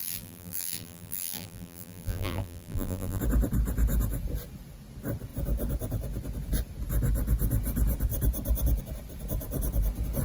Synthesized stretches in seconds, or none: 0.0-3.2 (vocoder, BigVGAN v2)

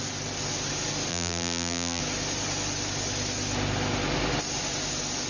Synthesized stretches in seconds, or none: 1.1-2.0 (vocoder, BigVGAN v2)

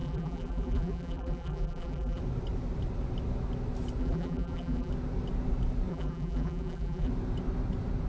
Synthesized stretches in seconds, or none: 0.0-2.2 (vocoder, BigVGAN v2); 4.0-4.9; 5.9-7.1

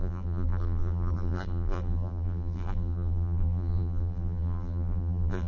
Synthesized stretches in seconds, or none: 0.0-5.5 (vocoder, BigVGAN v2)

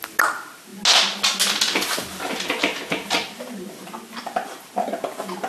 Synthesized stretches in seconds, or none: none

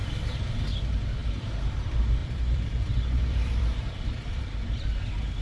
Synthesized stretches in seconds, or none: 0.0-0.7 (vocoder, BigVGAN v2); 1.2-1.7; 2.2-4.4